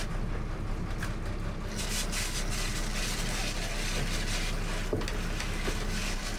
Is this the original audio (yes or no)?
yes